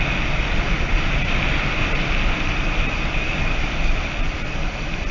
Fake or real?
real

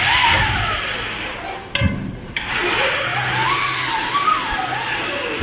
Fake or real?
real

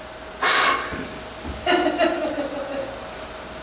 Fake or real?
real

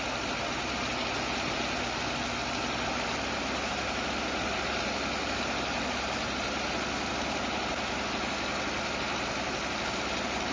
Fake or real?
real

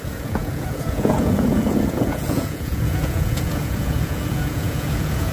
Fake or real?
fake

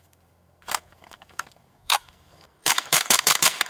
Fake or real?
fake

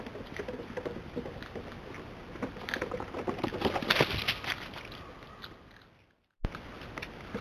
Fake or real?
real